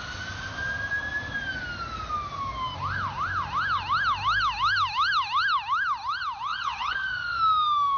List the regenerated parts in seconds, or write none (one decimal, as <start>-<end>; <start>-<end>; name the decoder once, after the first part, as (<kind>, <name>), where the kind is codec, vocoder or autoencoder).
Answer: 6.5-7.4 (vocoder, WaveNeXt)